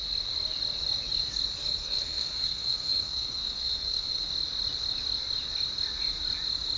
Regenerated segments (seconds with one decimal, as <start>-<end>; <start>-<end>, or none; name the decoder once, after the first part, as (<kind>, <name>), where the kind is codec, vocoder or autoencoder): 1.8-4.3 (codec, SNAC)